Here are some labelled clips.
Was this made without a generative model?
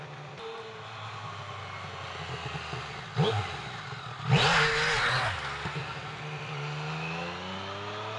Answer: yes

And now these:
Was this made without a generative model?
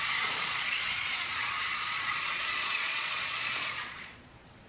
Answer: no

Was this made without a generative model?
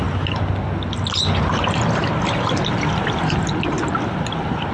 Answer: yes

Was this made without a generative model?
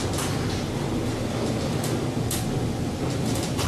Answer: yes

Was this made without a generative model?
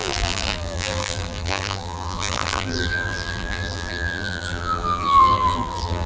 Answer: no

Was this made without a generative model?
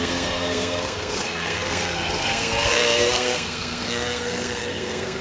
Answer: no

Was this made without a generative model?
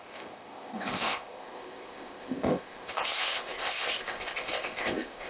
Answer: no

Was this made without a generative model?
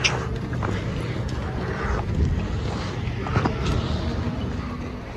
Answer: yes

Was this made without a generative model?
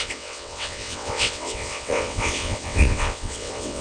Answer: no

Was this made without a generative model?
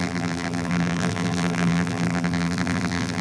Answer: no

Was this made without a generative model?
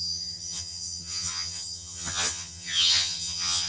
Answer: no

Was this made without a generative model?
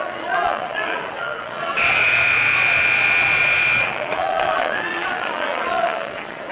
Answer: no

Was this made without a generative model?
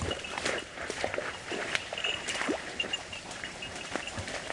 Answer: no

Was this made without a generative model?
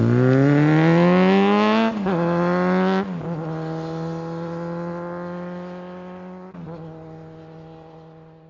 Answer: yes